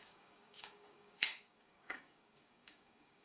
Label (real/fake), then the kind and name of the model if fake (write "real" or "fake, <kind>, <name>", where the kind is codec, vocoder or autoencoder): fake, codec, DAC